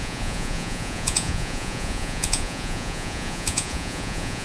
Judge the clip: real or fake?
fake